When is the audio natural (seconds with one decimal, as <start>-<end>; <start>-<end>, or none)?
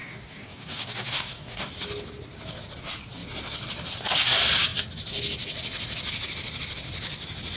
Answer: 1.7-7.6